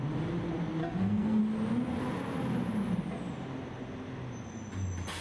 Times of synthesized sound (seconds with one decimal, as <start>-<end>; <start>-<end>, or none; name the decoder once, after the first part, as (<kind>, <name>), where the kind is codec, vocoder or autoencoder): 0.8-1.4 (codec, SNAC)